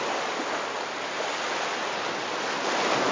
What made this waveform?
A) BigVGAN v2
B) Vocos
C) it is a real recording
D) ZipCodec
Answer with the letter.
C